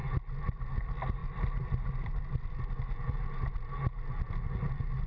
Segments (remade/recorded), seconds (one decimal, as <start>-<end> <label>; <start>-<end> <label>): 0.0-1.2 recorded; 1.2-2.4 remade; 2.4-5.1 recorded